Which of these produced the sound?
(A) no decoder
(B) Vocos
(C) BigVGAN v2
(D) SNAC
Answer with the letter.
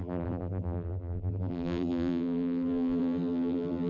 C